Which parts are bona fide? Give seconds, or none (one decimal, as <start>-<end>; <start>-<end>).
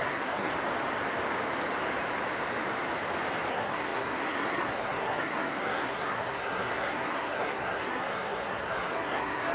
0.5-3.5